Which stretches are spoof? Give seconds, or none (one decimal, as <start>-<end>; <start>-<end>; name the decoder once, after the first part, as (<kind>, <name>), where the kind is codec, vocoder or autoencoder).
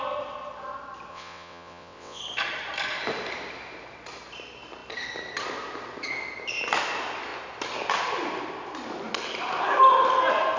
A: 1.1-2.2 (vocoder, WaveNeXt)